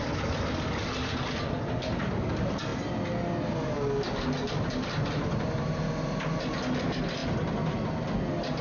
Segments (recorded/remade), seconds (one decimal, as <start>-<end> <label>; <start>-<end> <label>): 0.0-8.6 recorded